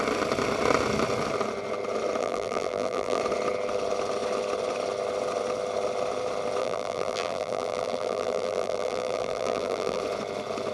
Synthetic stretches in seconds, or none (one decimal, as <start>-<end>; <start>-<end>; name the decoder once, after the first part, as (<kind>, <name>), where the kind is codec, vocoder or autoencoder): 2.2-3.2 (vocoder, BigVGAN v2); 6.6-10.0